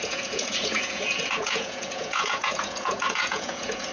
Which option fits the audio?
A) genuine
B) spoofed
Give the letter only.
B